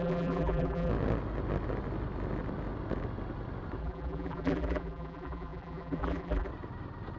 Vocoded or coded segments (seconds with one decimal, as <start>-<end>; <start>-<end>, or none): 0.0-0.9; 3.8-6.5